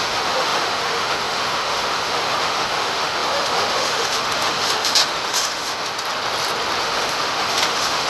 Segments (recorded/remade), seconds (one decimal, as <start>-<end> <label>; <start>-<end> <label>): 0.0-5.9 remade; 5.9-6.8 recorded; 6.8-8.1 remade